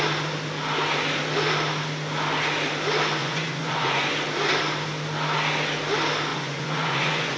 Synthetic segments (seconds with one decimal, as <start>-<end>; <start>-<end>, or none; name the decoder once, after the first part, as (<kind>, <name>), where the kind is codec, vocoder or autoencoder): 3.2-4.1 (vocoder, Vocos); 6.3-7.4